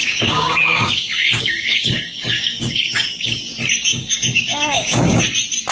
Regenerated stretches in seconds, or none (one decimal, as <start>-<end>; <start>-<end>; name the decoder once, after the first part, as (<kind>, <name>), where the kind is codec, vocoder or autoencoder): 0.0-3.4 (codec, DAC); 3.9-5.2